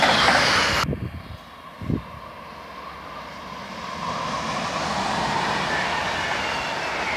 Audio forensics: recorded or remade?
recorded